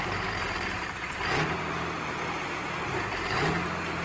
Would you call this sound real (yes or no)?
no